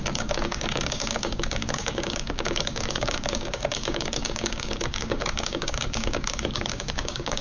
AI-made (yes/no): yes